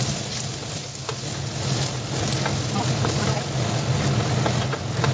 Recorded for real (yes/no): yes